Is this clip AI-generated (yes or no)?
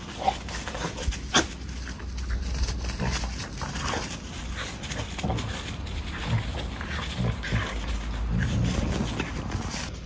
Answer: no